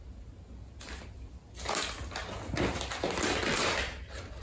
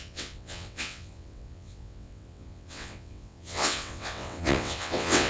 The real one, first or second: first